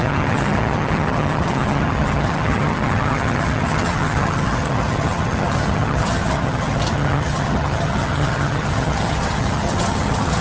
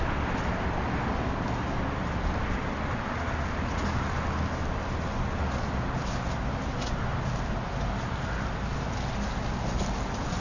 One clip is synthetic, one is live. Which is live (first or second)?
second